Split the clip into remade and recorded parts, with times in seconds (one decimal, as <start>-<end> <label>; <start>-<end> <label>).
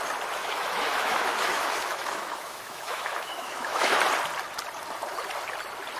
0.0-0.4 recorded; 0.4-4.0 remade; 4.0-6.0 recorded